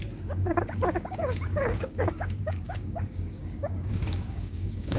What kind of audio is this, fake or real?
fake